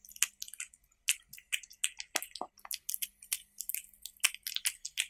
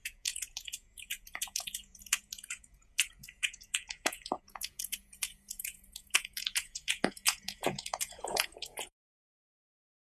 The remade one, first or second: second